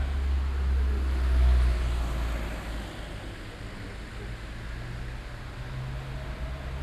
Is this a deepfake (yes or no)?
no